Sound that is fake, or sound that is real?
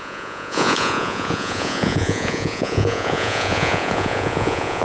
fake